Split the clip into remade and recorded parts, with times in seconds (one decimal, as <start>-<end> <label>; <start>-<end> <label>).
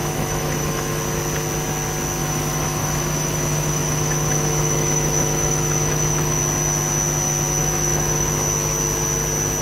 0.0-1.0 remade; 1.0-2.2 recorded; 2.2-6.4 remade; 6.4-7.6 recorded; 7.6-8.3 remade; 8.3-9.6 recorded